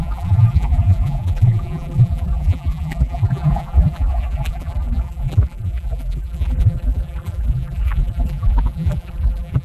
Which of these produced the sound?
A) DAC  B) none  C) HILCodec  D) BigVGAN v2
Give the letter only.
D